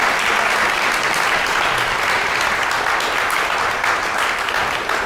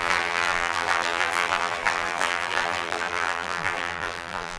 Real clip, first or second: first